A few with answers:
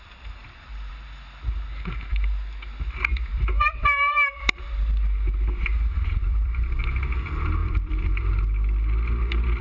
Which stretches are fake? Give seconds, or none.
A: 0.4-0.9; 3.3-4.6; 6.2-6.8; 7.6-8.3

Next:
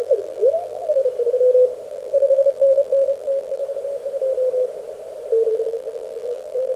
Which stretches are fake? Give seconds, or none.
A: 0.0-1.0; 1.9-3.6; 5.5-6.8

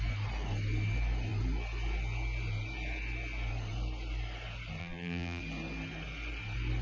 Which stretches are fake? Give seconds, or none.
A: 4.8-5.4